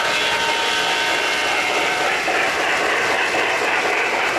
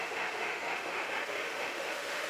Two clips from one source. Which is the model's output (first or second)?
second